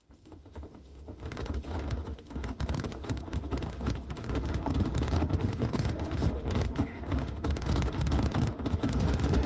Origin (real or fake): fake